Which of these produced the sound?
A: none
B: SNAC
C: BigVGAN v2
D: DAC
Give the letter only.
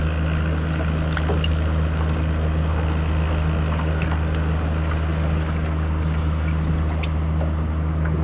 A